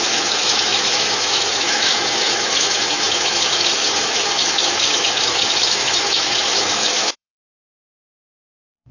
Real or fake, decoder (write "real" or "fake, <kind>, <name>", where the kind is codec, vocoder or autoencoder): fake, autoencoder, DAC-VAE